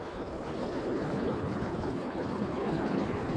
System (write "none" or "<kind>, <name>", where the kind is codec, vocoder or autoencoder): codec, HILCodec